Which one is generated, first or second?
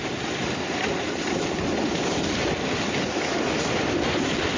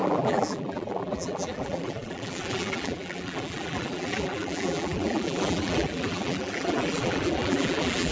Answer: second